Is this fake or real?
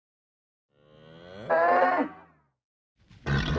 real